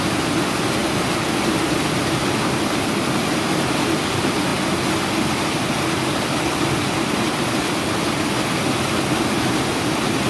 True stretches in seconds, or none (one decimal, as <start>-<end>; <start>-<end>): 0.0-10.3